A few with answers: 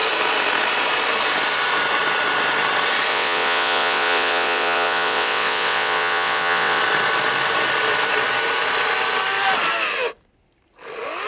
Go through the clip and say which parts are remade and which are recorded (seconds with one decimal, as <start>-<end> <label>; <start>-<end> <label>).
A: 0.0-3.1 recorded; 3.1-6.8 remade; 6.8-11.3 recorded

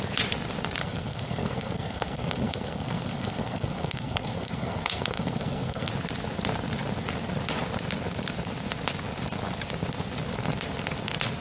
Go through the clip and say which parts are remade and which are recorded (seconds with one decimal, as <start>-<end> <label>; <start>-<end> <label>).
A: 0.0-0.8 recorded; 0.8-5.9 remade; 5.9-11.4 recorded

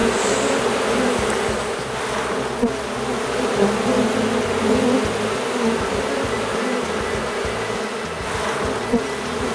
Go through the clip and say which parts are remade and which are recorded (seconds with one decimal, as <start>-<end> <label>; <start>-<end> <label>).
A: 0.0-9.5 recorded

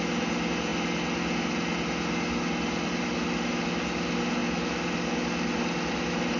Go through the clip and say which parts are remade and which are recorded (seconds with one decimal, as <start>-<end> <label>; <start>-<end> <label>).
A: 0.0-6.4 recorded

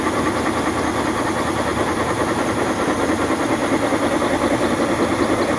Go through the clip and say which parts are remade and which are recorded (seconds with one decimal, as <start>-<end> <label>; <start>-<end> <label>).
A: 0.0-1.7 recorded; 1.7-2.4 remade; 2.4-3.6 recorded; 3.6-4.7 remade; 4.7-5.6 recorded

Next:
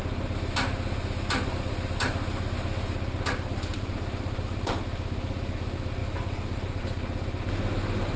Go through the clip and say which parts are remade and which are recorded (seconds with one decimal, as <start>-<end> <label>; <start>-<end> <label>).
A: 0.0-3.7 recorded; 3.7-4.8 remade; 4.8-6.0 recorded; 6.0-6.8 remade; 6.8-8.2 recorded

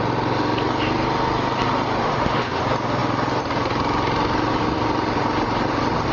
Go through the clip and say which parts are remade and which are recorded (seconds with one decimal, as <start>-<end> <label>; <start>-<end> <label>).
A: 0.0-2.0 recorded; 2.0-2.6 remade; 2.6-6.1 recorded